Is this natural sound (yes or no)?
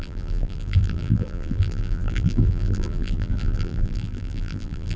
no